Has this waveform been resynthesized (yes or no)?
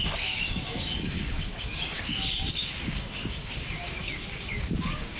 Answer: yes